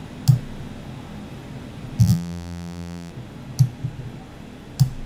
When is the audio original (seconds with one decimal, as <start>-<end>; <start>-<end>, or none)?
0.0-2.0; 3.1-5.1